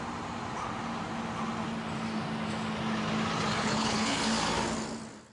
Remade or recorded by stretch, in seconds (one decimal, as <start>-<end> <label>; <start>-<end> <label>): 0.0-3.6 recorded; 3.6-4.2 remade; 4.2-5.3 recorded